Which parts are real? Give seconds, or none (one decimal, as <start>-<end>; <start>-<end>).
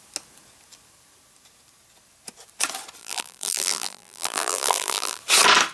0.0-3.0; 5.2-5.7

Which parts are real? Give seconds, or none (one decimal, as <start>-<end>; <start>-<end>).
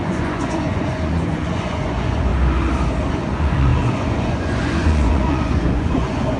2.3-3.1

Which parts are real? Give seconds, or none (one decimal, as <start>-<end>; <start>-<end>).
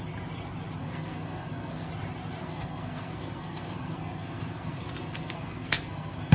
0.0-0.8; 1.9-2.4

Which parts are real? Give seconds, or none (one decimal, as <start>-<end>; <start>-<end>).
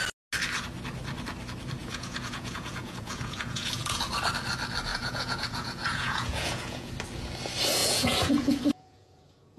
0.0-1.8; 4.0-4.9; 6.9-7.8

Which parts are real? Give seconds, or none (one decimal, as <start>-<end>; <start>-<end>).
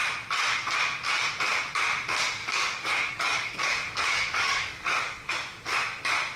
0.0-2.4; 5.3-6.4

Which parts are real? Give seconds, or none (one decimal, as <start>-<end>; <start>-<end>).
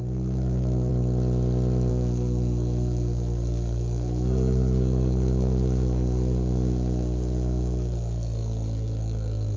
0.9-1.9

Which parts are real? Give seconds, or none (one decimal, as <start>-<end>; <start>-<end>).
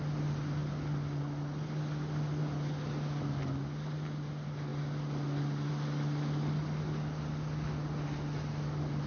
0.0-9.1